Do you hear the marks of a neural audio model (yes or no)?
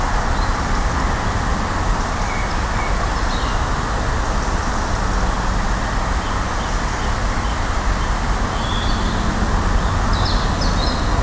no